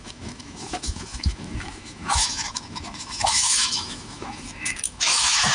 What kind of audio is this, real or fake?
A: fake